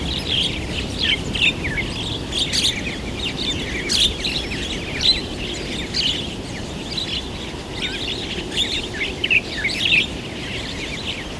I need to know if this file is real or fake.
real